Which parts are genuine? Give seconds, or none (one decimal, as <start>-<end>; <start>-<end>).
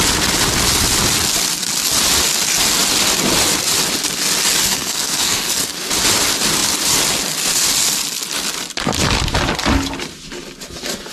0.0-4.7; 5.9-11.1